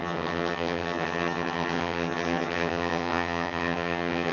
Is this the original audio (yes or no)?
no